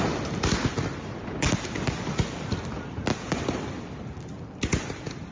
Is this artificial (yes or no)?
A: no